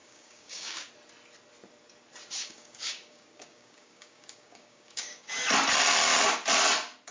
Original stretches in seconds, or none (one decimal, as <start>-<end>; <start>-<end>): 0.9-2.4; 5.3-7.1